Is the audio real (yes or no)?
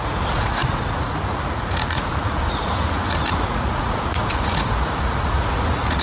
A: no